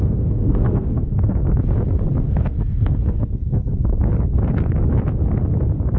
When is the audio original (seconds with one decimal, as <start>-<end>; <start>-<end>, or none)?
1.4-2.2; 4.1-6.0